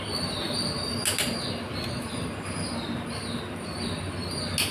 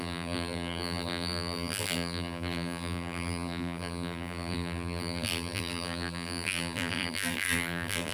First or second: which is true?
first